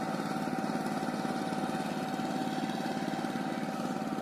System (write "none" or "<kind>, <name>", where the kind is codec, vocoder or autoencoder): none